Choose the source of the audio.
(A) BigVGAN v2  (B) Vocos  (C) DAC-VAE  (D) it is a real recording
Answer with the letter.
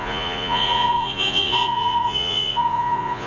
B